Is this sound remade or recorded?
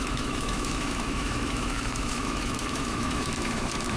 remade